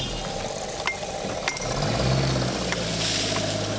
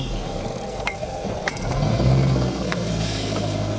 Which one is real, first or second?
first